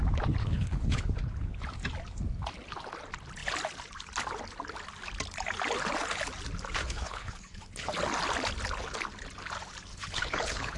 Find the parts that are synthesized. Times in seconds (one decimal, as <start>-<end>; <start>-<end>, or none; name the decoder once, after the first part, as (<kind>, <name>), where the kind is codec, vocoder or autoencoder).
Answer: 0.4-1.3 (codec, HILCodec); 6.8-7.9; 9.9-10.8